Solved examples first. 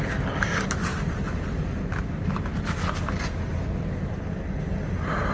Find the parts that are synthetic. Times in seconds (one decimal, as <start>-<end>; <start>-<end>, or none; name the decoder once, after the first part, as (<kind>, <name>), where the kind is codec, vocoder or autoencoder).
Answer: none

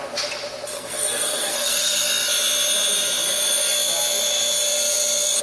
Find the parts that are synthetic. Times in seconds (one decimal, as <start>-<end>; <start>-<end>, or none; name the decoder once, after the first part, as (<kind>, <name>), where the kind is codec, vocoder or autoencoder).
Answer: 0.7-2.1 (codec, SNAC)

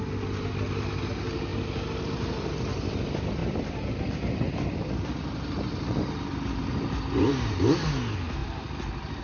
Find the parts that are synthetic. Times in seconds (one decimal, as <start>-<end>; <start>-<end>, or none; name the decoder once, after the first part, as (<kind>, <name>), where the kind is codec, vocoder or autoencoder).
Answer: none

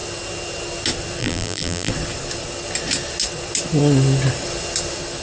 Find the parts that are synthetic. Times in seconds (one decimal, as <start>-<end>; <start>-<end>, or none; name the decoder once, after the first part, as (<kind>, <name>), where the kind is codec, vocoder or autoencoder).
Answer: 1.2-1.9 (vocoder, BigVGAN v2)